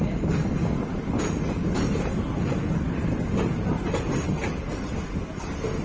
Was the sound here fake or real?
real